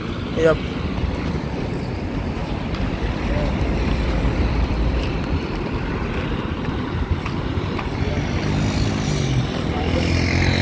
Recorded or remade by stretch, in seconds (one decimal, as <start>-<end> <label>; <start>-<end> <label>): 0.0-2.4 recorded; 2.4-6.8 remade; 6.8-10.6 recorded